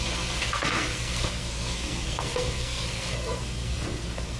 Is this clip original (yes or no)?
no